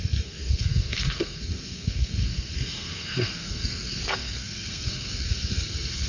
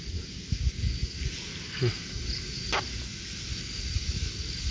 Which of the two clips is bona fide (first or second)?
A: second